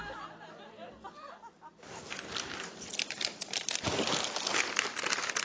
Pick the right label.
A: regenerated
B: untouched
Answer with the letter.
B